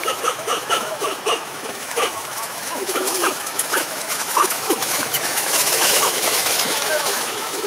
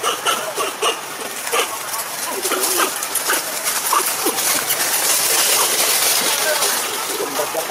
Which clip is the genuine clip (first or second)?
second